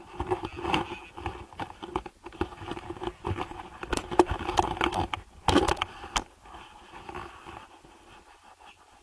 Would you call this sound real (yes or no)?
yes